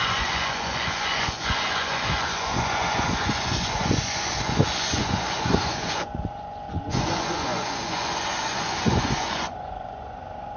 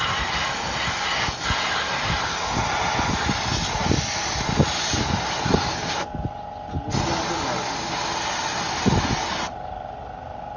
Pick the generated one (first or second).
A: first